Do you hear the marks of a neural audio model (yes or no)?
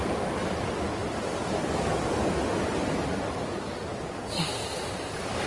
no